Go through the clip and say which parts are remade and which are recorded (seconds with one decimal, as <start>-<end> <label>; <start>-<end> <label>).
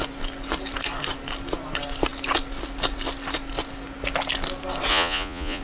0.0-4.9 recorded; 4.9-5.6 remade